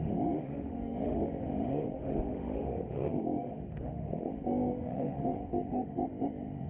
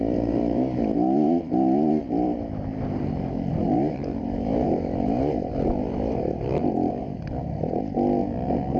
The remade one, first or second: first